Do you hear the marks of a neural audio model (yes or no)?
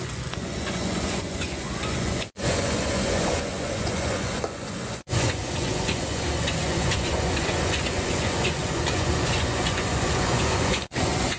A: yes